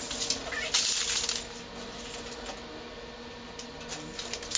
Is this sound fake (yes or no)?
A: no